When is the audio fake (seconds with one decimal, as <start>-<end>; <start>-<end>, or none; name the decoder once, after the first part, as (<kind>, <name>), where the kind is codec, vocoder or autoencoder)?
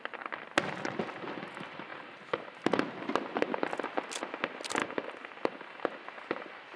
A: none